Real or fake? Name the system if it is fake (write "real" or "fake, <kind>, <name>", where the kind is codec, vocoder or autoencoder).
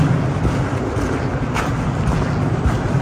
real